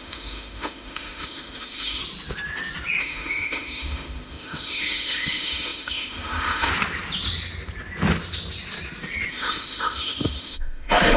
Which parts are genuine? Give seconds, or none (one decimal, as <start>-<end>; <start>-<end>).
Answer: 2.0-3.0; 6.7-9.3